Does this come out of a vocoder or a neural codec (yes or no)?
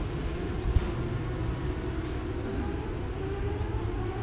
no